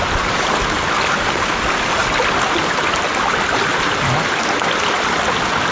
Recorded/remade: recorded